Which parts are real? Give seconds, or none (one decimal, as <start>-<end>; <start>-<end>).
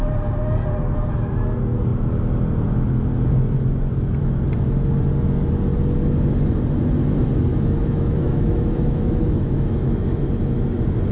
0.0-7.5; 10.2-11.1